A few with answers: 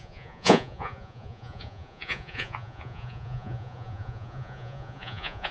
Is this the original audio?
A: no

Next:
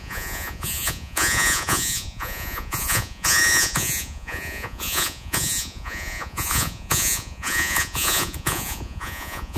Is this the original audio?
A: no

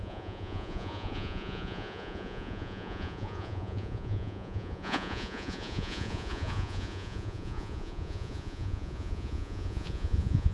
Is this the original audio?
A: no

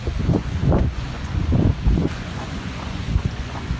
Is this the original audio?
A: no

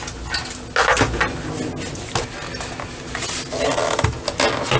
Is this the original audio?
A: yes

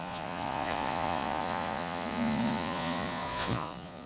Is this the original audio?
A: no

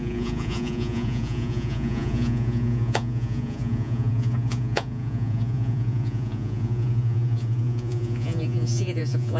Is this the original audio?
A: no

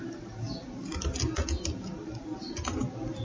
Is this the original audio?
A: yes